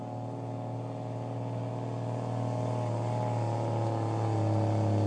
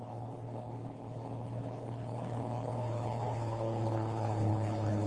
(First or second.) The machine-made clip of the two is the second